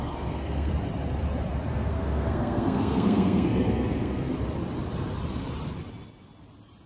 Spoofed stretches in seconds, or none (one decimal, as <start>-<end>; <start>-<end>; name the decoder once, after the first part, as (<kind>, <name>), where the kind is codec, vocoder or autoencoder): 0.0-0.7 (codec, SNAC); 1.7-4.3